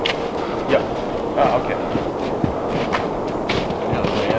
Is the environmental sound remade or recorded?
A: recorded